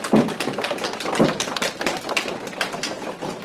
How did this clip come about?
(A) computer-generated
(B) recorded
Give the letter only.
B